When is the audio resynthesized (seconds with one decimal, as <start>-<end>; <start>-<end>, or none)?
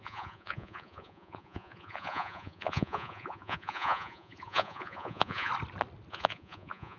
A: 0.0-5.5; 6.1-7.0